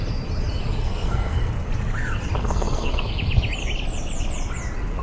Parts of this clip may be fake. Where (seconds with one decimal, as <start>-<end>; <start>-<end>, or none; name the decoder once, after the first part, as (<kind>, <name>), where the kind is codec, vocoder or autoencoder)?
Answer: 0.8-1.5 (codec, SNAC); 2.4-3.1